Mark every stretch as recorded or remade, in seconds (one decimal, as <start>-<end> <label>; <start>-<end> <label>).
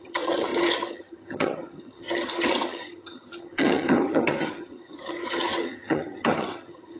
0.0-7.0 remade